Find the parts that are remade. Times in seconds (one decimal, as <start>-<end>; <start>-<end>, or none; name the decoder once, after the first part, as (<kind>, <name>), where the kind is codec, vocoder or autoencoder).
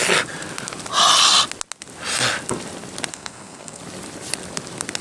3.1-3.8 (codec, SNAC)